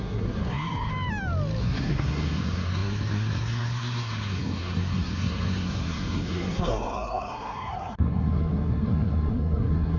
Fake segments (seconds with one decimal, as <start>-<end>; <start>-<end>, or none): 0.0-0.9; 1.6-10.0